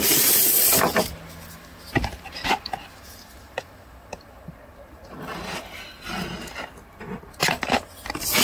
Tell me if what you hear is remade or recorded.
recorded